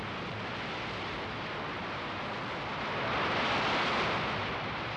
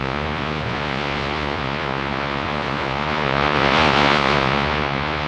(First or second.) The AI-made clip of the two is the second